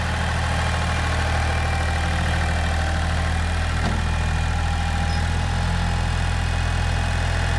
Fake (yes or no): no